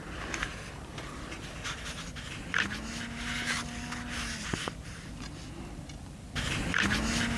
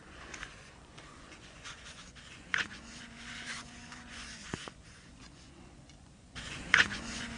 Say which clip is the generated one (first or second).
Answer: second